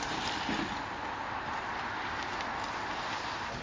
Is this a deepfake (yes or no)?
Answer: no